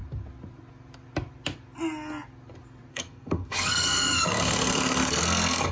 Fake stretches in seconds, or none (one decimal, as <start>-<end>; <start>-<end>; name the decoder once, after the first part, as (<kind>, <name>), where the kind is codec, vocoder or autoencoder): 2.9-5.7 (codec, SNAC)